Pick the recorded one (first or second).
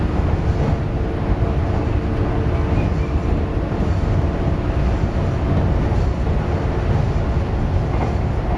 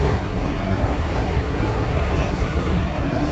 first